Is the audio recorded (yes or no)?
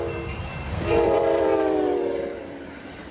no